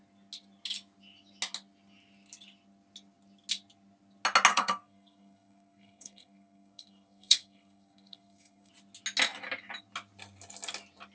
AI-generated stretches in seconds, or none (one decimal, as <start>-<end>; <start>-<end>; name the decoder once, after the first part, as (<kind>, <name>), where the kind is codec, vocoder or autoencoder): 4.5-8.7 (codec, SNAC)